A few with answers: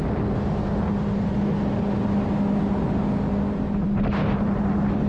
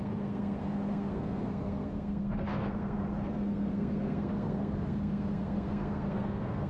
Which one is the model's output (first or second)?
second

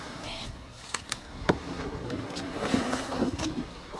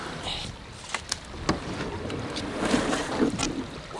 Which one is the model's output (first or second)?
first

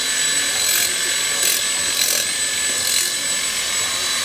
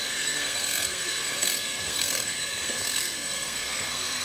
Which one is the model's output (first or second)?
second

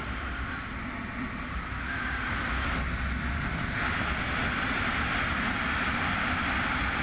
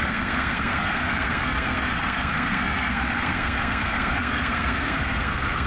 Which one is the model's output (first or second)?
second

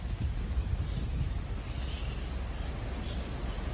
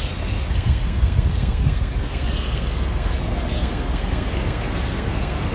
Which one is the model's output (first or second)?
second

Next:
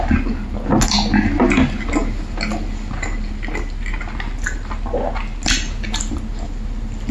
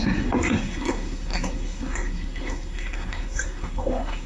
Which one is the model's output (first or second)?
second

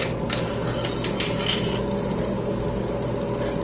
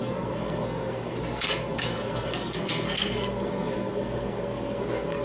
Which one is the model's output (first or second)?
second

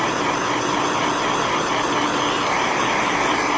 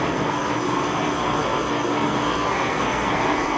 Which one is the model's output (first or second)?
second